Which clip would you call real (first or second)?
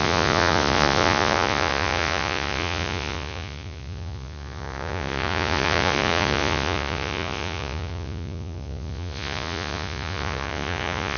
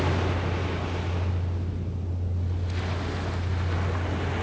second